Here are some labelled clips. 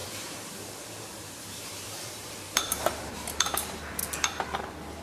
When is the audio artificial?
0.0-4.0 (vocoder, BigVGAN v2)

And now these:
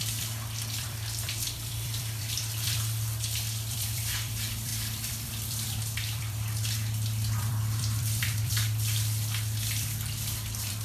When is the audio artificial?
0.0-10.8 (vocoder, BigVGAN v2)

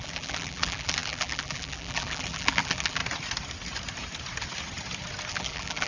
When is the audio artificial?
0.0-3.0 (vocoder, BigVGAN v2); 5.3-5.9

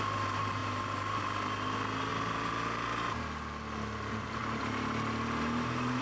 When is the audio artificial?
none